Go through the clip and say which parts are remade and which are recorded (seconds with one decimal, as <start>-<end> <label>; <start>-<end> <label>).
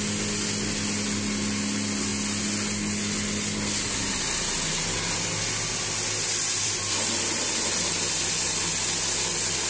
0.0-6.3 recorded; 6.3-8.7 remade; 8.7-9.7 recorded